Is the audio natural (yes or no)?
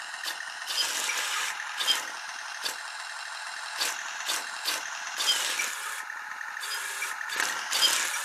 yes